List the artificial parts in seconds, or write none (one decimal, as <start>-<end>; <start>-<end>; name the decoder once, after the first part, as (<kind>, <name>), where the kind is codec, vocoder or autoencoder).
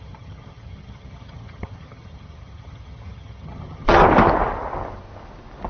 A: 0.0-4.0 (vocoder, HiFi-GAN)